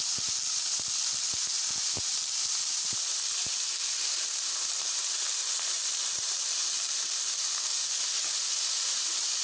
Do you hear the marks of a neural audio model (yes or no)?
yes